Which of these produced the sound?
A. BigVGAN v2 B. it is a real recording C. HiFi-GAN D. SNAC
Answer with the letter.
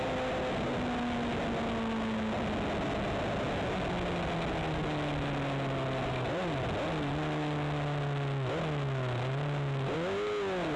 B